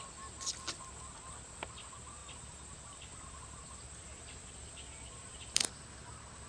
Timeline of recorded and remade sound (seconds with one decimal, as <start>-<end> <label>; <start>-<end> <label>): 0.0-2.2 recorded; 2.2-5.7 remade; 5.7-6.5 recorded